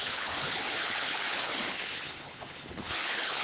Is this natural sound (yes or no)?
no